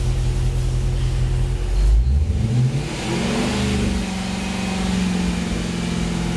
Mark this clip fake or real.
real